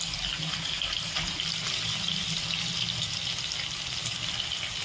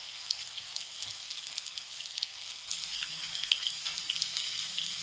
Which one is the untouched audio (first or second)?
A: first